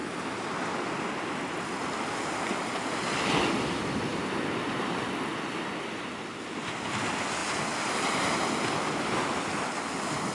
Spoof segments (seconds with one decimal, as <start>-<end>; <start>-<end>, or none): none